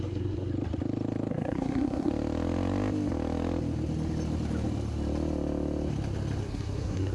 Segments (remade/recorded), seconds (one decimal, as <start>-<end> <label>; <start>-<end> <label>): 0.0-0.5 remade; 0.5-1.3 recorded; 1.3-2.1 remade; 2.1-6.4 recorded; 6.4-7.1 remade